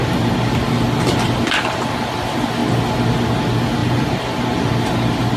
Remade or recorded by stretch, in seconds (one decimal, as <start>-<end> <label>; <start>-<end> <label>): 0.0-0.7 remade; 0.7-3.8 recorded; 3.8-4.7 remade; 4.7-5.4 recorded